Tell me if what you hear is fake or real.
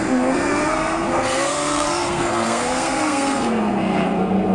fake